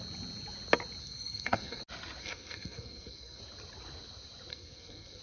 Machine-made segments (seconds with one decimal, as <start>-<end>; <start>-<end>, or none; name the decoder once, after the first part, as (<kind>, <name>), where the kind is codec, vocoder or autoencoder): 1.0-1.8 (codec, SNAC); 2.2-3.4; 4.5-5.2